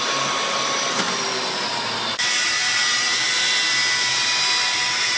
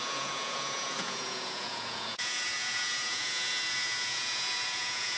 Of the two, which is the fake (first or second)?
second